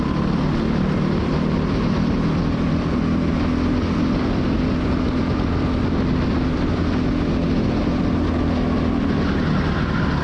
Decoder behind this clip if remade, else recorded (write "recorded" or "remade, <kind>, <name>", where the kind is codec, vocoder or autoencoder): recorded